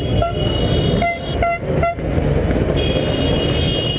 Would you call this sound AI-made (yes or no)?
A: no